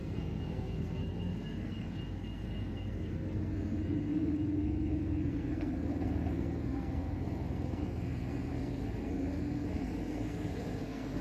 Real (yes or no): no